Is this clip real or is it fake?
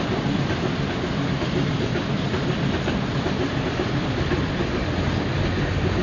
real